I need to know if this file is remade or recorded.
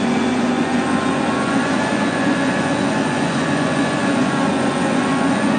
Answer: remade